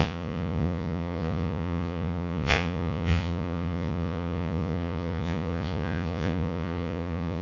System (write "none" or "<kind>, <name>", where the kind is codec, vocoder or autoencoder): vocoder, Vocos